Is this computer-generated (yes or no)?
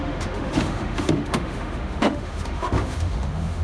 yes